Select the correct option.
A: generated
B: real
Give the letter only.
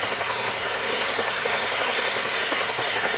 A